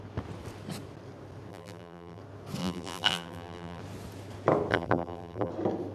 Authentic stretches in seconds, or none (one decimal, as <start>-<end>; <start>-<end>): 0.0-1.5; 2.2-2.6; 3.8-4.7; 5.5-5.9